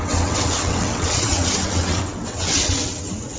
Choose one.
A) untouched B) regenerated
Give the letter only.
B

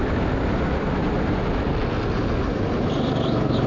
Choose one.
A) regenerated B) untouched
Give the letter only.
B